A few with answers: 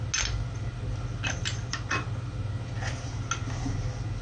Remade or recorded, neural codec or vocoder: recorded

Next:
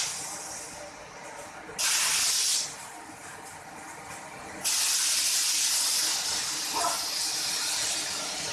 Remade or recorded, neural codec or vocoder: recorded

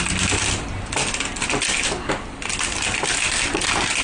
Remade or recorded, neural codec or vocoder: recorded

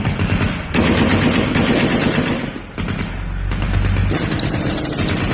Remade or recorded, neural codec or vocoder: recorded